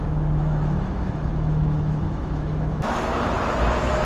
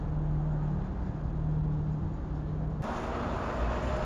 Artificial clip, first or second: first